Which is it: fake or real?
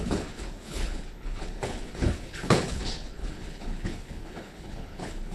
fake